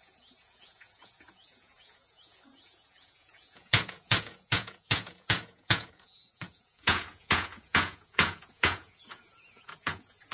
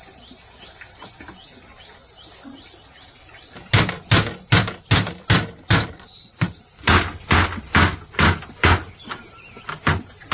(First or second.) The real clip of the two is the second